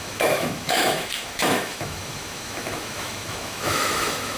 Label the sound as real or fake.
fake